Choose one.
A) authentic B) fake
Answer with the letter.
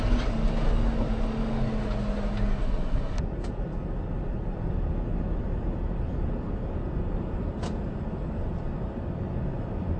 A